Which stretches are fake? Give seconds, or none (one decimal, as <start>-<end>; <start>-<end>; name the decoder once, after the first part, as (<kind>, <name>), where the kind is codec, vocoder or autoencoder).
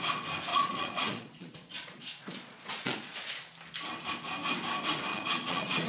0.5-3.3 (vocoder, Vocos); 5.1-5.9